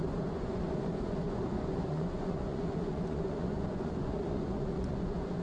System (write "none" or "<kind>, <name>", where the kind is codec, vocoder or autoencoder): vocoder, Vocos